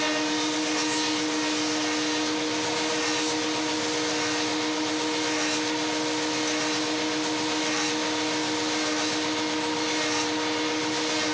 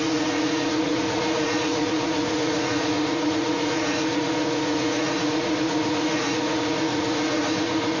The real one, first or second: first